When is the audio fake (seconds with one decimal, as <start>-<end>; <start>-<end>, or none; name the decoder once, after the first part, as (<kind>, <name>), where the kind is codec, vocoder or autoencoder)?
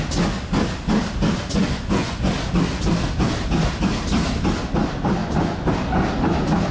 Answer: 1.6-2.3 (vocoder, Vocos); 5.2-5.7